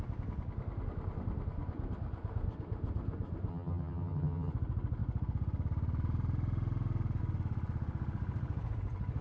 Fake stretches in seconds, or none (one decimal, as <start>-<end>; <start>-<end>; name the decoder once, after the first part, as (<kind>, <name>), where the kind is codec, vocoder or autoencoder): 3.5-4.5 (vocoder, HiFi-GAN)